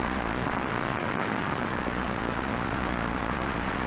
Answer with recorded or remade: remade